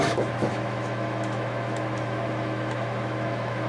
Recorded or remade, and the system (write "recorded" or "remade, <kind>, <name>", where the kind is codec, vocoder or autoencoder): remade, autoencoder, DAC-VAE